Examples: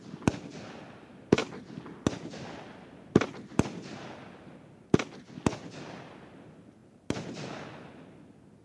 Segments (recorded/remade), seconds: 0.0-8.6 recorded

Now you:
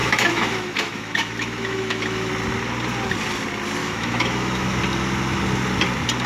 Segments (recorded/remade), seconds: 0.0-2.3 remade; 2.3-3.8 recorded; 3.8-4.8 remade; 4.8-6.3 recorded